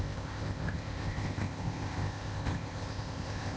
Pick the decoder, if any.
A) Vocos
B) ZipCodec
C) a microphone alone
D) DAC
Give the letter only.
B